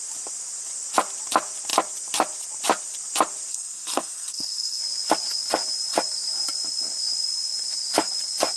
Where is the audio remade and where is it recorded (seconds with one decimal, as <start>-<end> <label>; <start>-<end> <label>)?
0.0-3.5 recorded; 3.5-4.8 remade; 4.8-8.6 recorded